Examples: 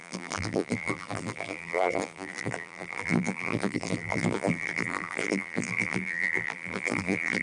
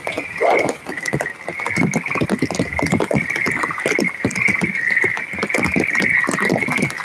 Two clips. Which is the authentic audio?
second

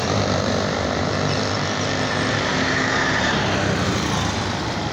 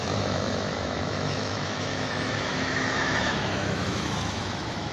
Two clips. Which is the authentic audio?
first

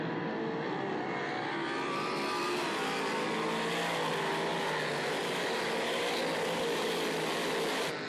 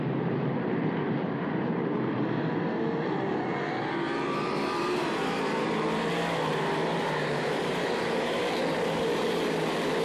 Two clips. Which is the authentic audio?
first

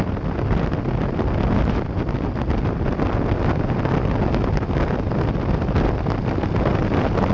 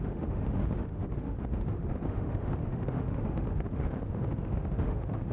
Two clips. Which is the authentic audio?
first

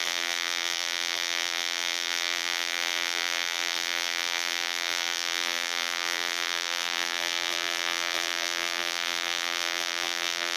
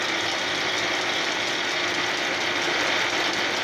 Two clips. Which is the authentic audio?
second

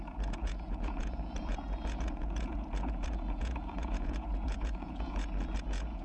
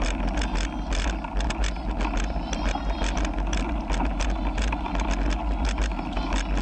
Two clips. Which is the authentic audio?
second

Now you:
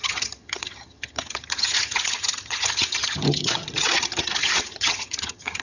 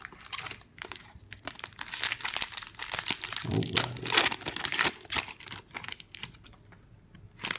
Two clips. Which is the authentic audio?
second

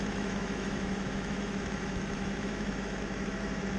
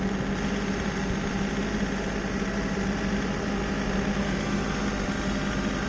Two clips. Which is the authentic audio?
second